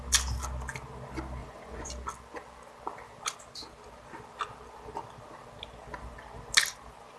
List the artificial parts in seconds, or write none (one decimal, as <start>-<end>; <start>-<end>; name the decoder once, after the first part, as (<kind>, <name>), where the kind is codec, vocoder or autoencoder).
1.4-1.9 (vocoder, Vocos)